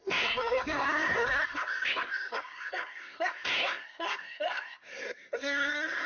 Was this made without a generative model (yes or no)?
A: no